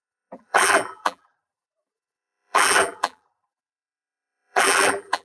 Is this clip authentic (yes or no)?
no